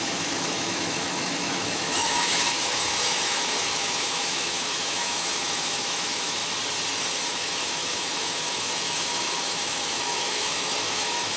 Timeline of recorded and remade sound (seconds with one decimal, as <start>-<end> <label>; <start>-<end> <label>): 0.0-6.4 remade; 6.4-7.3 recorded; 7.3-11.4 remade